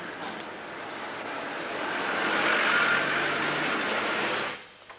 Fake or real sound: real